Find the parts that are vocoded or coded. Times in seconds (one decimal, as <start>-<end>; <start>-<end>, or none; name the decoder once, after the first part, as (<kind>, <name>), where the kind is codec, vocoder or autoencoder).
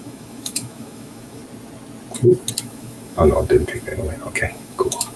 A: 0.0-1.4 (autoencoder, DAC-VAE); 2.6-3.9; 4.5-5.2